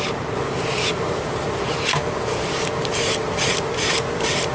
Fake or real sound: fake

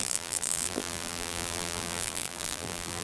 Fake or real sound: fake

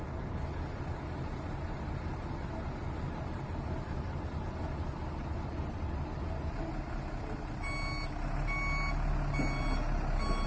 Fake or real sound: real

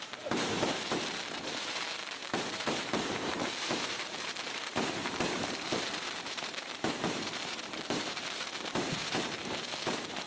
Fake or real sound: fake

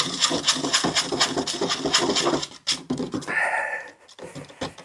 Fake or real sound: fake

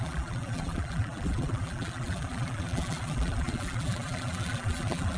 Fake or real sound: fake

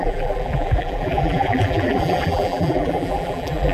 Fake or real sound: fake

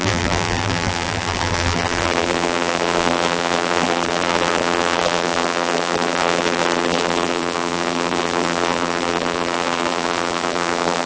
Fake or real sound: fake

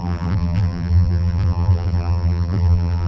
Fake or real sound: fake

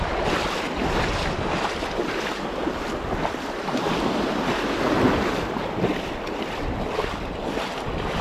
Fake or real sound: real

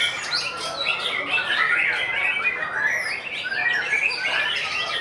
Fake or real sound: real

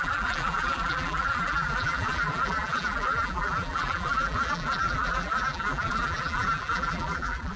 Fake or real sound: fake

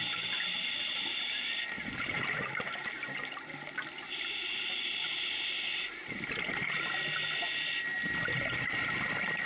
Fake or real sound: real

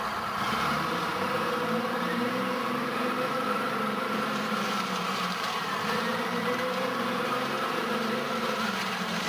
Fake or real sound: fake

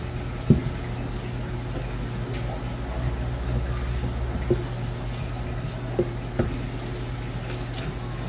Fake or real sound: real